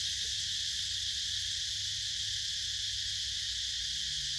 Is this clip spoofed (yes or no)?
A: no